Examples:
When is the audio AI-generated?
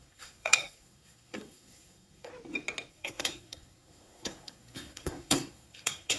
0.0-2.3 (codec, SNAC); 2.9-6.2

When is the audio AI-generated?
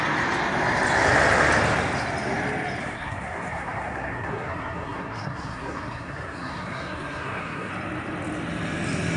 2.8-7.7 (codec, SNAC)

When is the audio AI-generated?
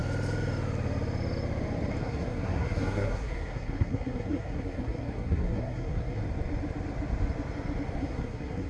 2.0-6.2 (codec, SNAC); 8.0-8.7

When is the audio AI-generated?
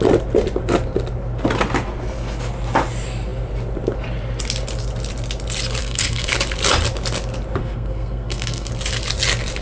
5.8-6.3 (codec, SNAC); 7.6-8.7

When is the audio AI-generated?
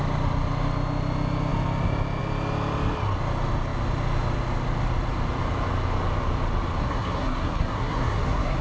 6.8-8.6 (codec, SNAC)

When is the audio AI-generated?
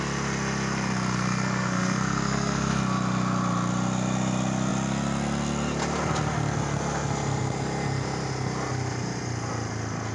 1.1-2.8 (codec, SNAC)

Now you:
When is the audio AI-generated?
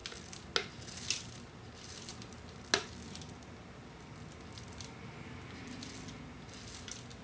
none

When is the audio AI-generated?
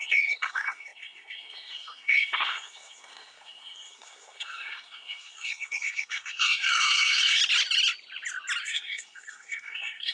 0.0-7.4 (codec, SNAC); 8.6-10.1